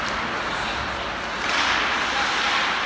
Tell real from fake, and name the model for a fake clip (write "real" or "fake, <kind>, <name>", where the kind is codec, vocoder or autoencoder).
real